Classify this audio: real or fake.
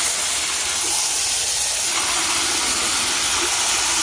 real